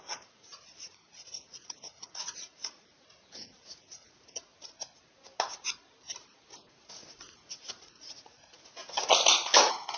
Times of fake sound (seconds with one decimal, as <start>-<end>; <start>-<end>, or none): 0.0-4.5; 6.9-8.8; 9.6-10.0